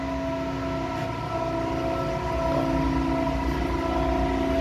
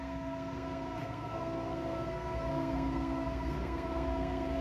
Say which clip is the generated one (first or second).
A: second